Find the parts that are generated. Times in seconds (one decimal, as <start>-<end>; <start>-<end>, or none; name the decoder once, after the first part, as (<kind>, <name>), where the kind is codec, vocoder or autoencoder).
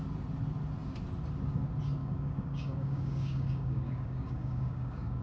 2.0-5.2 (codec, DAC)